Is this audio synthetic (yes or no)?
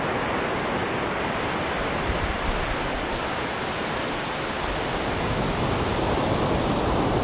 no